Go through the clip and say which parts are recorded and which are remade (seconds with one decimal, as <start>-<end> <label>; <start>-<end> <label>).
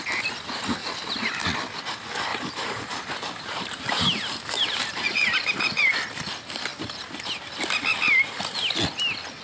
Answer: 0.0-2.3 recorded; 2.3-5.9 remade; 5.9-9.4 recorded